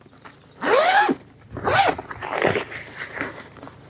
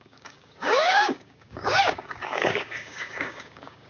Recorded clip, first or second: first